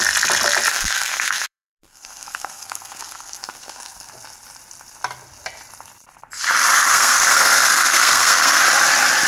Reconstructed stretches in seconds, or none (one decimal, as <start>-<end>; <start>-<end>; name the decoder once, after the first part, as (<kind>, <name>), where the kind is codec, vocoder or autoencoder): 0.7-4.1 (codec, SNAC); 6.7-8.6

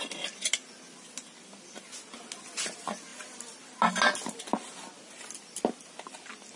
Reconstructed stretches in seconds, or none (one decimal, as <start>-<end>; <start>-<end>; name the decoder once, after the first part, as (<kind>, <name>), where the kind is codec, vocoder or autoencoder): none